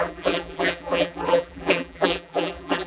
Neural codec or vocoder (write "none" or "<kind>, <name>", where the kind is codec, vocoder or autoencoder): vocoder, BigVGAN v2